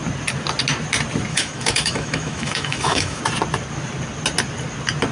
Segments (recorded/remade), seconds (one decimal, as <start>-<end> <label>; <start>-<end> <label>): 0.0-1.3 recorded; 1.3-3.2 remade; 3.2-5.1 recorded